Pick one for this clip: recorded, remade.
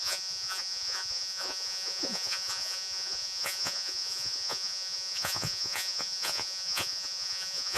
remade